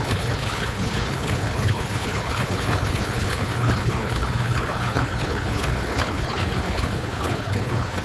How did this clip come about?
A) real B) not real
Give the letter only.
B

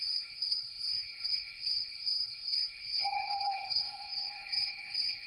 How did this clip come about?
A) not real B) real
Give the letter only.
A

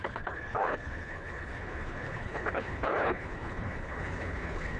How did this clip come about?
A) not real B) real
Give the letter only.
A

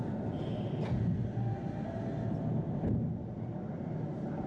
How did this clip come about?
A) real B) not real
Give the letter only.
A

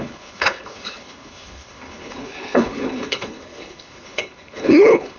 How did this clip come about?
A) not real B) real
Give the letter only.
A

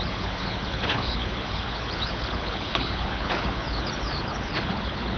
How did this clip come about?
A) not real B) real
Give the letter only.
A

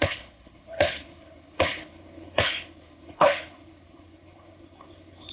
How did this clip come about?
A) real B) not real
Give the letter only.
B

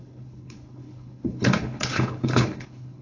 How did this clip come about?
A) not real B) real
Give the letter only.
A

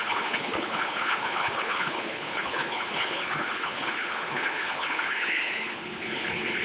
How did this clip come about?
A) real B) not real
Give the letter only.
B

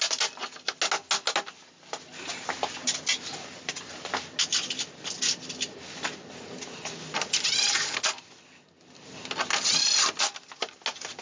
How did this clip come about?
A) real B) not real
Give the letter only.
A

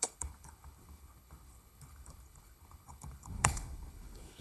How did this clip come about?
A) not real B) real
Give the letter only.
A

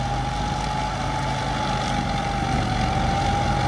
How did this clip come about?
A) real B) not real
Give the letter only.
A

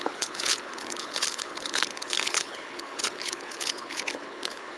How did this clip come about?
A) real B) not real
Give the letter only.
B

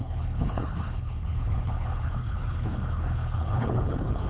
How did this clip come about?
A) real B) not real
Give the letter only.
B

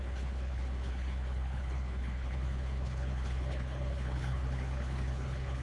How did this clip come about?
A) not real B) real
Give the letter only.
A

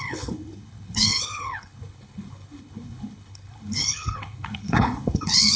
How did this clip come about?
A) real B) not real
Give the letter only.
B